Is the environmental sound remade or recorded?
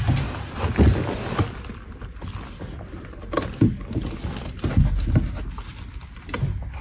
recorded